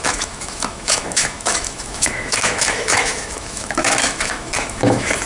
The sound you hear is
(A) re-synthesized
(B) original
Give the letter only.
A